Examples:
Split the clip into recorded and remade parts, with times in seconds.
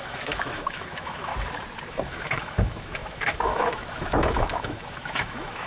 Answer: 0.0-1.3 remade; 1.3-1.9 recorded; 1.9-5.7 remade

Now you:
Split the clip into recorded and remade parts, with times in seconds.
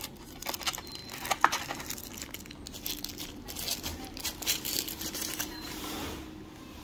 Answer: 0.0-3.9 recorded; 3.9-5.9 remade; 5.9-6.8 recorded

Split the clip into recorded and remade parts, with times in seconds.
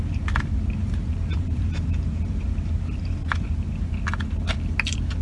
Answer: 0.0-0.8 recorded; 0.8-3.9 remade; 3.9-5.2 recorded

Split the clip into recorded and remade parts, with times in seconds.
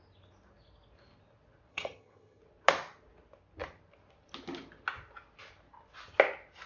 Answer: 0.0-1.7 recorded; 1.7-2.4 remade; 2.4-6.7 recorded